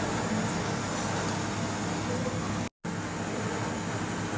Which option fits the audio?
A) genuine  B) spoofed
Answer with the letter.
A